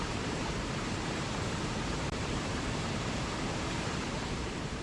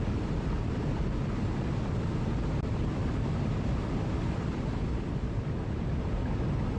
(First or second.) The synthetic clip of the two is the first